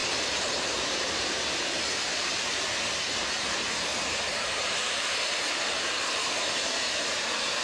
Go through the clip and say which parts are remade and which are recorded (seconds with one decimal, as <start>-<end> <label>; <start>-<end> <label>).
0.0-7.6 remade